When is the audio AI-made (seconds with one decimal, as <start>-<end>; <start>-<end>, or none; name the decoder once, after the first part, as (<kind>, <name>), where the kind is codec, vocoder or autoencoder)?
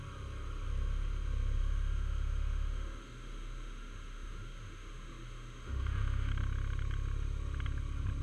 1.6-6.3 (autoencoder, DAC-VAE)